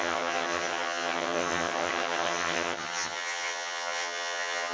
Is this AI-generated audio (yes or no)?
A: yes